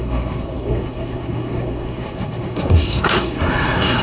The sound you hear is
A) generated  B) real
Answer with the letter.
A